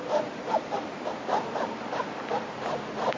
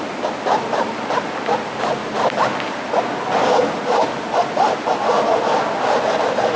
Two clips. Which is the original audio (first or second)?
second